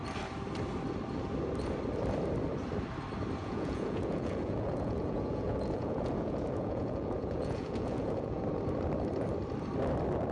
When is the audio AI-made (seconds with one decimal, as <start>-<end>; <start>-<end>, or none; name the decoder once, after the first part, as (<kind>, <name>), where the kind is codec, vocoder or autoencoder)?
3.4-8.4 (vocoder, Vocos)